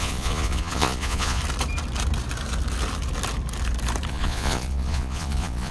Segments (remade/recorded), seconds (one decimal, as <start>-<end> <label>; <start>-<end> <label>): 0.0-1.4 remade; 1.4-4.1 recorded; 4.1-5.7 remade